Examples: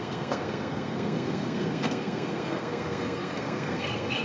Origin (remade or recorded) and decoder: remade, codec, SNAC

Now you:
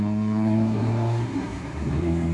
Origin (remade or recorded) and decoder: remade, codec, SNAC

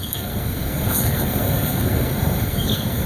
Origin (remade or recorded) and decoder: remade, codec, SNAC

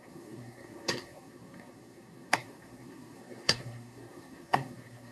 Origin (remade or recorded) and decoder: remade, codec, SNAC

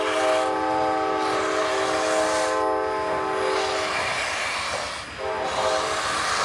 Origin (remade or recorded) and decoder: recorded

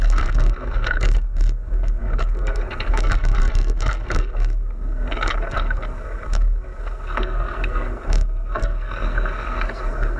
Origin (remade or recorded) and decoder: remade, codec, SNAC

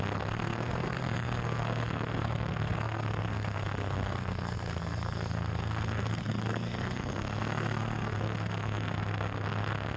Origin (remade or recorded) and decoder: remade, codec, SNAC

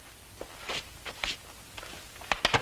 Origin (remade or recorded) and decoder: recorded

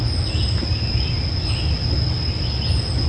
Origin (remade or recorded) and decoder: recorded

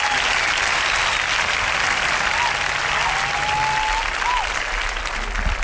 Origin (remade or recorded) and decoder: recorded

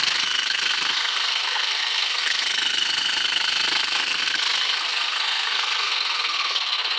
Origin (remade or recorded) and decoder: remade, codec, SNAC